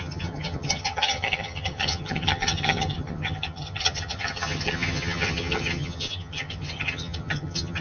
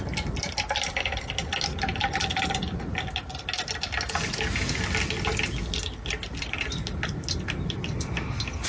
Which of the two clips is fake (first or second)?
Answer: first